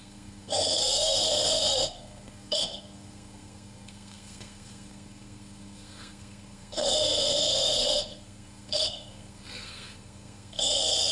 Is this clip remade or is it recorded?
remade